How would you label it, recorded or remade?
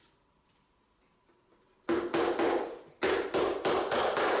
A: recorded